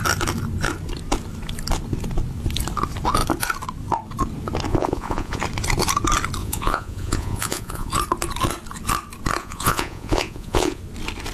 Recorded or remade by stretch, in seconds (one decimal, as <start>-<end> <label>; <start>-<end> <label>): 0.0-4.7 recorded; 4.7-5.4 remade; 5.4-6.4 recorded; 6.4-7.9 remade; 7.9-9.4 recorded; 9.4-10.8 remade; 10.8-11.3 recorded